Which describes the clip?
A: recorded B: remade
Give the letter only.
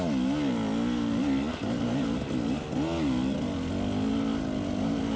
A